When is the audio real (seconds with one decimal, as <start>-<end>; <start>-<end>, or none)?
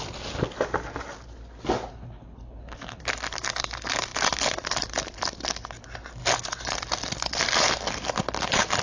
0.0-1.9; 3.0-8.8